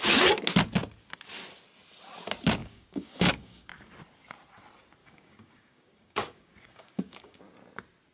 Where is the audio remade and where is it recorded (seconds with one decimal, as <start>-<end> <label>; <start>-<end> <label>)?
0.0-2.6 recorded; 2.6-3.7 remade; 3.7-5.0 recorded; 5.0-7.4 remade; 7.4-8.1 recorded